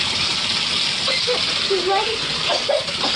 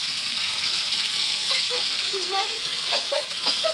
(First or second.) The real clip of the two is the first